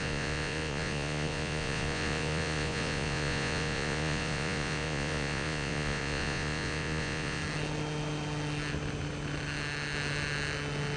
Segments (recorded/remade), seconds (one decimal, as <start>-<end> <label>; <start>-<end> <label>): 0.0-7.4 remade; 7.4-11.0 recorded